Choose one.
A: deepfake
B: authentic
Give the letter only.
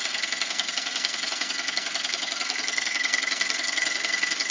A